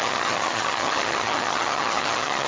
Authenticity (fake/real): fake